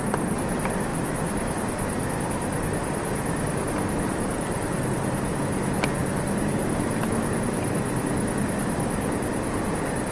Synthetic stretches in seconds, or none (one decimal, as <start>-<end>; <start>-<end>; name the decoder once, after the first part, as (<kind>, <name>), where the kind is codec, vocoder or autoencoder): 0.9-5.4 (vocoder, BigVGAN v2); 6.0-7.4